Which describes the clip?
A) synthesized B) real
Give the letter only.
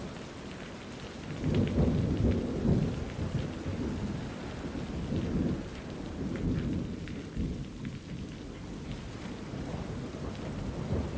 B